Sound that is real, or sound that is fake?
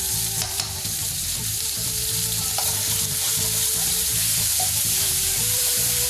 fake